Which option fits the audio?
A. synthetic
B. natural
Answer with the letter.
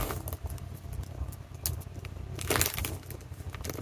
B